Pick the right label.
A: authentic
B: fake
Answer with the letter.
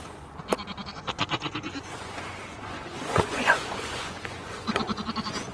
B